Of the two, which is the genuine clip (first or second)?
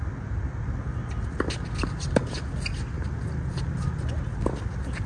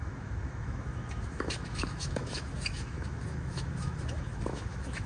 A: first